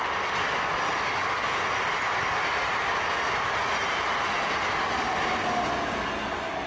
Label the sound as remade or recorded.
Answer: recorded